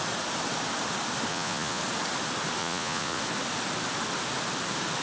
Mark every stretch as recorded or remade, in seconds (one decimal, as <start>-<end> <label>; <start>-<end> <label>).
0.0-1.3 recorded; 1.3-1.8 remade; 1.8-2.6 recorded; 2.6-3.2 remade; 3.2-5.0 recorded